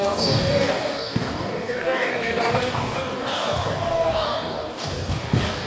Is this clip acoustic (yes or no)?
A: no